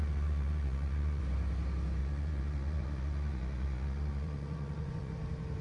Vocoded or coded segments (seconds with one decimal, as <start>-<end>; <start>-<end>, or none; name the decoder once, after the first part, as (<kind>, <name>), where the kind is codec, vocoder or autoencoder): 0.0-1.2 (vocoder, Vocos); 2.0-5.1